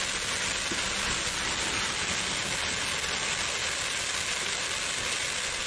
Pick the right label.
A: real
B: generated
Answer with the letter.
A